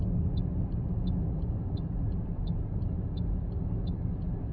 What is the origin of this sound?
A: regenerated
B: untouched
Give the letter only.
B